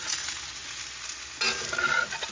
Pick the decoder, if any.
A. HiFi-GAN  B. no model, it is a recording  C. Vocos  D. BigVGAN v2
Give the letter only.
B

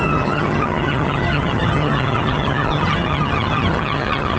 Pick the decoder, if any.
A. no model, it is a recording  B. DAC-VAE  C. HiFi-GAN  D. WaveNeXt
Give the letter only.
C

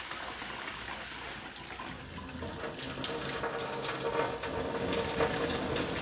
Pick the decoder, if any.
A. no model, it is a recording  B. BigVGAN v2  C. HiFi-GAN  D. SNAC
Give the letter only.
A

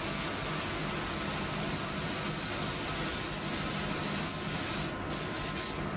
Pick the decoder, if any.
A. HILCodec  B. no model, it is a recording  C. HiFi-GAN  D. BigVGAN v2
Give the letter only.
B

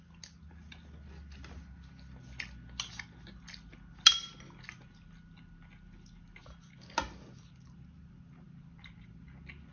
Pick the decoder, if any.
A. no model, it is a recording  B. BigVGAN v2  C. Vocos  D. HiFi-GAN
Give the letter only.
A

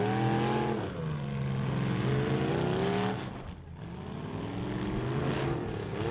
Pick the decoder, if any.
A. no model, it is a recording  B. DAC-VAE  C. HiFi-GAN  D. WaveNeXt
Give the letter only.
A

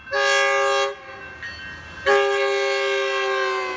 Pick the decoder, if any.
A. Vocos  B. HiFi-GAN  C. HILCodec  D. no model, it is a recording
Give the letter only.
D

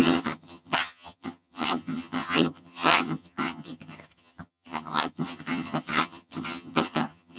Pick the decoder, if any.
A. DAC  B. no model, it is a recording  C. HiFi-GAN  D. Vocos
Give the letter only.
C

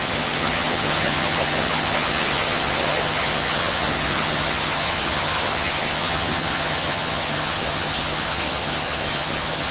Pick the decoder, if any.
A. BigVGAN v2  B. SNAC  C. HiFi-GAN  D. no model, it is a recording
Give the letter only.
C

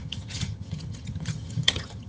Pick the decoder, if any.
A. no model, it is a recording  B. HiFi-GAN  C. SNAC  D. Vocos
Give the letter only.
B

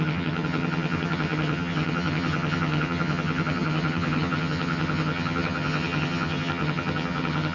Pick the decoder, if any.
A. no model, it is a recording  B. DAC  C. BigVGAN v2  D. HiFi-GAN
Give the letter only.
D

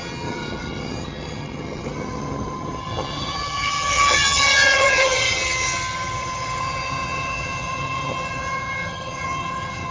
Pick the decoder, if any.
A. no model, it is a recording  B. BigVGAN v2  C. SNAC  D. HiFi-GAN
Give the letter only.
D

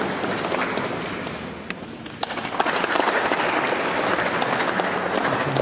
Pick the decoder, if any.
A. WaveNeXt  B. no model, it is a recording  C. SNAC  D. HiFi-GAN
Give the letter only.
B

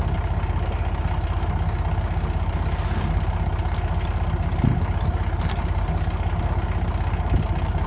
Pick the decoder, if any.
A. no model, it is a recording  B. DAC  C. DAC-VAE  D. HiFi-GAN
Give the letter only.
A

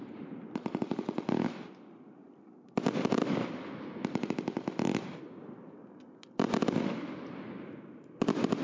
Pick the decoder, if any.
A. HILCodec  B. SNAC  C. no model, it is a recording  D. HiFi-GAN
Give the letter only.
C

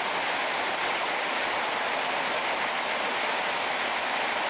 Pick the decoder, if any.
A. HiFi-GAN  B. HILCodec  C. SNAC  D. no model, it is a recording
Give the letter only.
D